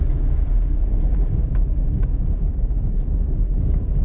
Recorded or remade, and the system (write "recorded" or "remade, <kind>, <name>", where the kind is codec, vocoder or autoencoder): remade, codec, DAC